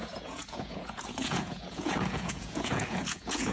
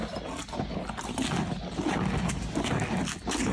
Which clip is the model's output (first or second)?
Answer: first